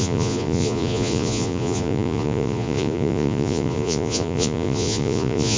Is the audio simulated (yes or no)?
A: yes